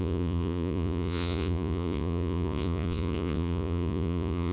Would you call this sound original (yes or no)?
no